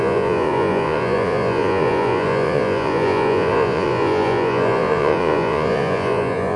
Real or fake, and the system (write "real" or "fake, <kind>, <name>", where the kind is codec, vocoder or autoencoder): fake, vocoder, Vocos